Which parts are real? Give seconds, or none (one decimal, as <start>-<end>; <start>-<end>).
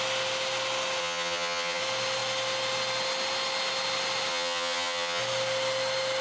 0.0-1.0; 1.8-4.3; 5.2-6.2